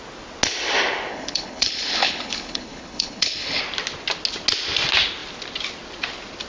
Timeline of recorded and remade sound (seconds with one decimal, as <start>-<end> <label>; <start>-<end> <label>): 0.0-1.1 recorded; 1.1-3.6 remade; 3.6-6.5 recorded